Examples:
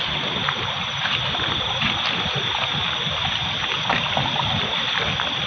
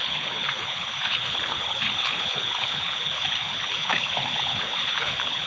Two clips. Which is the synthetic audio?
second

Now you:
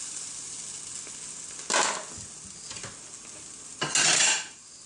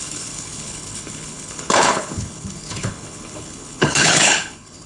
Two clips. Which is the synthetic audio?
second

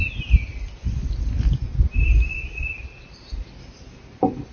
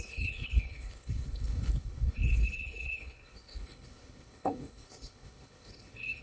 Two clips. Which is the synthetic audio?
second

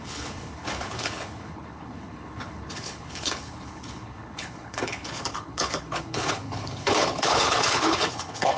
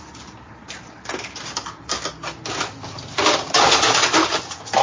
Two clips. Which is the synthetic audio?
first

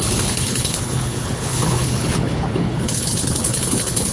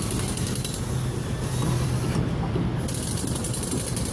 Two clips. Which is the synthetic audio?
first